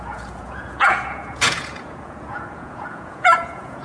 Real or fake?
fake